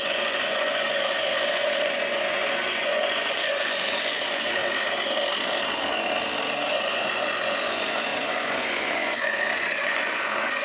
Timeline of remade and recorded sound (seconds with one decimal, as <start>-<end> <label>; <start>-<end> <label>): 0.0-4.6 remade; 4.6-6.7 recorded; 6.7-10.6 remade